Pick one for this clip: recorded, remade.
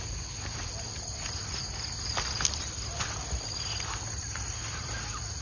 remade